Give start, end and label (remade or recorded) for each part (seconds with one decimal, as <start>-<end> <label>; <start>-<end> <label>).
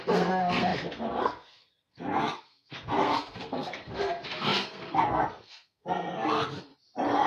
0.0-6.7 remade; 6.7-7.3 recorded